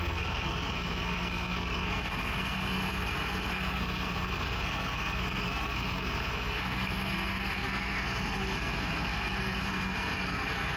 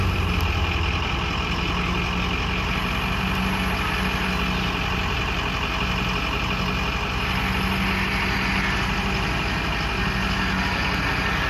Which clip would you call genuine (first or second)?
second